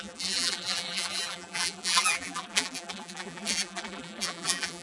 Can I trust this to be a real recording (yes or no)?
no